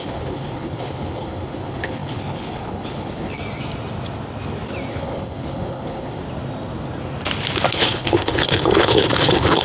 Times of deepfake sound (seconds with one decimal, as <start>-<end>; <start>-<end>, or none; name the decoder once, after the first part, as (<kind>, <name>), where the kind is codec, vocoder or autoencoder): 0.0-3.4 (codec, HILCodec); 4.9-6.2; 7.7-9.6